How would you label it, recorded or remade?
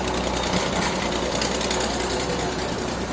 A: recorded